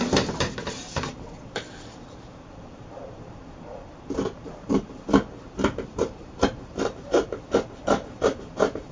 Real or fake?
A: fake